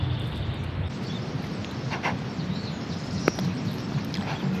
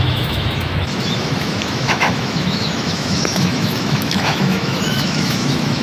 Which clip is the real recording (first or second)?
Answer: first